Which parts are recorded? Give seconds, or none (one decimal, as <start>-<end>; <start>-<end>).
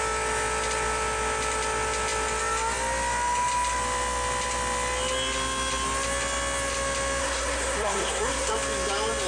0.0-7.2; 8.5-9.3